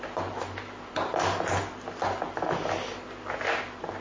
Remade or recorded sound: recorded